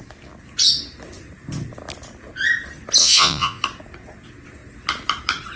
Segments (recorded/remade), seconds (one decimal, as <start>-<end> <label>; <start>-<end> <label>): 0.0-3.0 recorded; 3.0-3.6 remade; 3.6-5.6 recorded